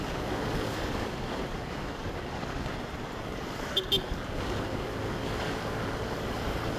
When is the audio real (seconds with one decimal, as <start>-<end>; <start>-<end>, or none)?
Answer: 2.7-3.2